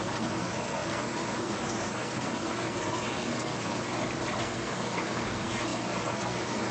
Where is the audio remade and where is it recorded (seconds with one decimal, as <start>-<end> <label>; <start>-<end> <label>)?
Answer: 0.0-3.9 remade; 3.9-4.4 recorded; 4.4-6.7 remade